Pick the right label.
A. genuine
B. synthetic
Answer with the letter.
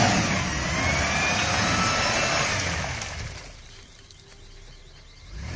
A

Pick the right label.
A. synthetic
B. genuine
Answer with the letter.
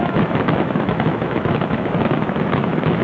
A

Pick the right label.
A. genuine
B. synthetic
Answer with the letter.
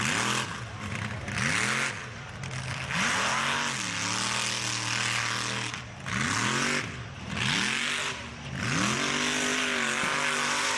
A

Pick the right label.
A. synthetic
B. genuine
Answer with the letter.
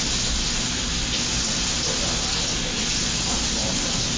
B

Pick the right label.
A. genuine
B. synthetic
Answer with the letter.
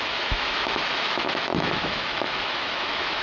B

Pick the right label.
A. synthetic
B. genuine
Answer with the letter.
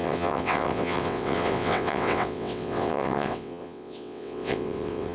A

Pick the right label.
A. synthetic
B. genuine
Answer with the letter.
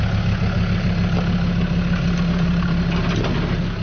B